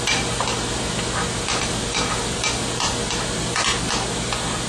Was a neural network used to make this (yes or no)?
no